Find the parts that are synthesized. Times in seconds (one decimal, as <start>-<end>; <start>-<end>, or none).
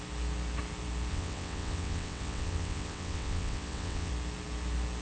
1.1-4.1